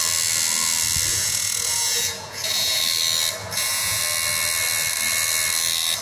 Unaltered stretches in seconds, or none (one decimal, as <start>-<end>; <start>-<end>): 0.0-1.1; 2.8-3.4; 4.0-6.0